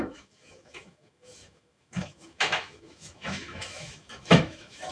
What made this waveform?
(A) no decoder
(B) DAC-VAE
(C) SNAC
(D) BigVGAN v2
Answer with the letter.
B